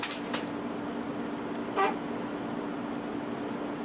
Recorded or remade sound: recorded